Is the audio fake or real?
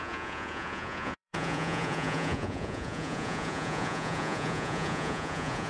fake